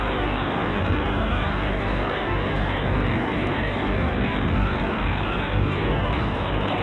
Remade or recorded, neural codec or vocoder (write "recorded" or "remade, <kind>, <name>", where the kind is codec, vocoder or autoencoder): remade, codec, DAC